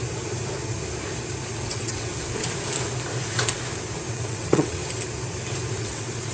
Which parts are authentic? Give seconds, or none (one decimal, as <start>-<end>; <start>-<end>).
0.0-1.5; 2.1-4.1; 4.8-5.8